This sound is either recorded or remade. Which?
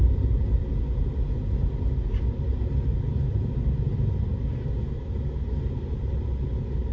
recorded